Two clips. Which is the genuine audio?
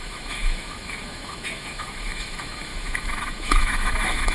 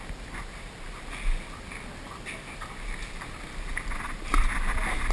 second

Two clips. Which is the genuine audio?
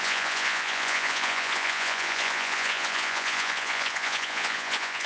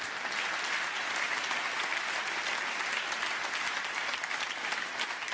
second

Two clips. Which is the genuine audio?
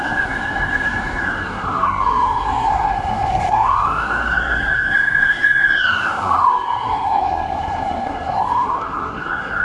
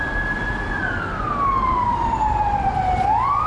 second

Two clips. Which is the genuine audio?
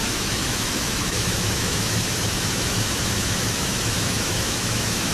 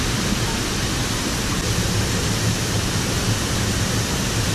second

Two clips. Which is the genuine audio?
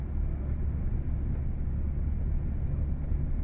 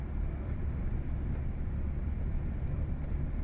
first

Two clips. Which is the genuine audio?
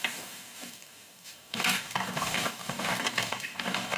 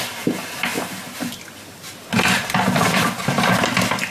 second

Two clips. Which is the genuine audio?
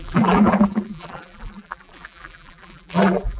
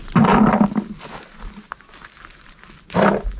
second